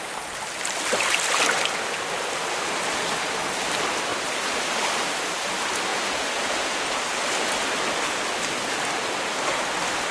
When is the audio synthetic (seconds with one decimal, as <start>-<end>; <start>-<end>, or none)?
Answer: 5.9-7.0